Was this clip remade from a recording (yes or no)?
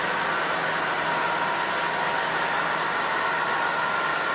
no